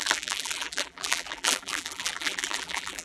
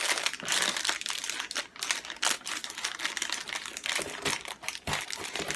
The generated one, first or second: first